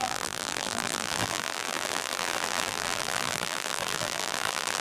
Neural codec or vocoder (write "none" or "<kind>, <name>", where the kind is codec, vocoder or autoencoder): vocoder, BigVGAN v2